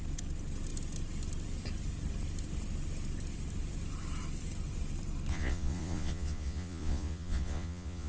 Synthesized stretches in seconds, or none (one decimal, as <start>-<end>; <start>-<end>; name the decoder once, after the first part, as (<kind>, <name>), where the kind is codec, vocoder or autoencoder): 5.3-8.1 (vocoder, Vocos)